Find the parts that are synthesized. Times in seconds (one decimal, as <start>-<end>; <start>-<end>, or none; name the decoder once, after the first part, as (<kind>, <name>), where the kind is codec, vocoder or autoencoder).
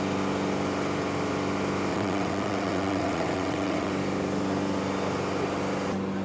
1.9-3.9 (vocoder, WaveNeXt)